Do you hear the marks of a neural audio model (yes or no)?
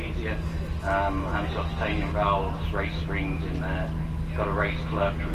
no